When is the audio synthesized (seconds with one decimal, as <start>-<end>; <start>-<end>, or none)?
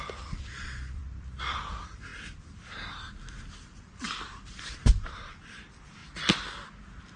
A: 0.0-6.0; 6.8-7.2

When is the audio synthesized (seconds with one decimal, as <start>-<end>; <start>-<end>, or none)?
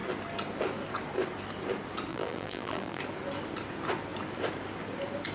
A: 2.1-3.0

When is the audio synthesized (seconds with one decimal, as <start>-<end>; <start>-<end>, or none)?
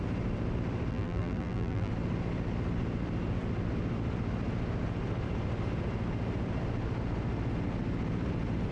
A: 0.9-1.9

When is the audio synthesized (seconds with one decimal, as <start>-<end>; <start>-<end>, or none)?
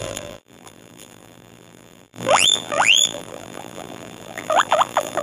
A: 0.0-5.2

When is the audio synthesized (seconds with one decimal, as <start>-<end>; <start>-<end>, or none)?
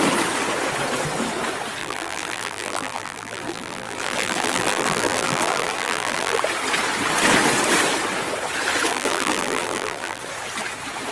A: 1.8-6.4; 8.9-10.2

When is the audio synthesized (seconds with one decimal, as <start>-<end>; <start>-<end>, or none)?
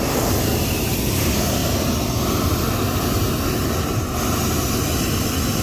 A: 0.0-1.6; 5.0-5.6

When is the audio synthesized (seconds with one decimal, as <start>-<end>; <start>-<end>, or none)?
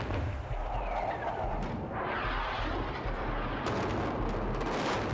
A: 0.6-3.7